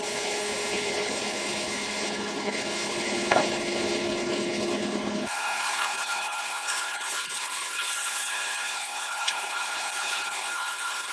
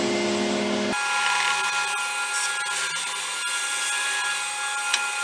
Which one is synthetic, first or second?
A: first